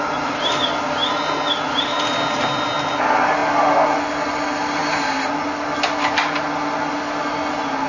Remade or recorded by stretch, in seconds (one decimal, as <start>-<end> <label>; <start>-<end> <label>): 0.0-7.9 recorded